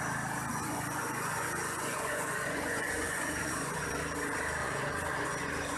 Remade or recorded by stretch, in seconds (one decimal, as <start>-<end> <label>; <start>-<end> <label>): 0.0-0.5 recorded; 0.5-4.0 remade; 4.0-4.6 recorded; 4.6-5.8 remade